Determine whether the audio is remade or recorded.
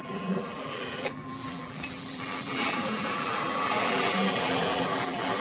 remade